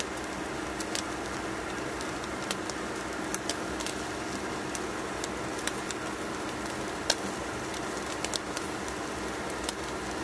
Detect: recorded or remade recorded